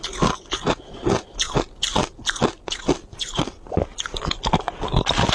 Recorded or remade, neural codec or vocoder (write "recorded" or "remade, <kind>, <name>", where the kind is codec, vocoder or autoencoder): recorded